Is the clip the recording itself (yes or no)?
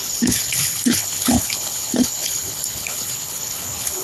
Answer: no